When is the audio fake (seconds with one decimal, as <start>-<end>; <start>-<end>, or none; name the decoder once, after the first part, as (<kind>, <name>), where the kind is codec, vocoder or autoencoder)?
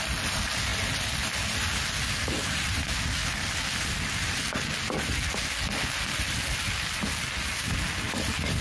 none